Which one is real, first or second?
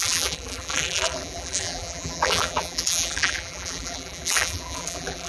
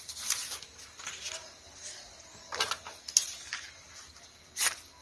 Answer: second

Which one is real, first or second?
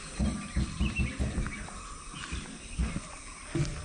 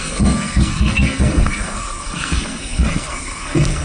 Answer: first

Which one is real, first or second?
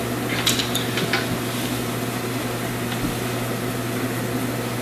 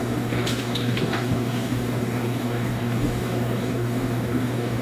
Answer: first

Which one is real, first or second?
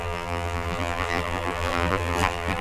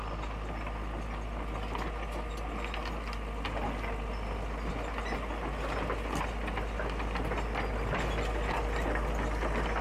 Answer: second